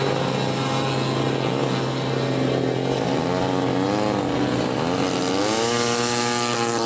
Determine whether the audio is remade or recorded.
recorded